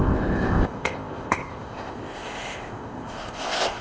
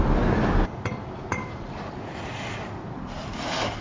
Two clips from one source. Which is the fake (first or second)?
first